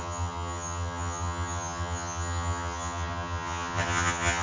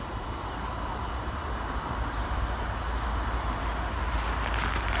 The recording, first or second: second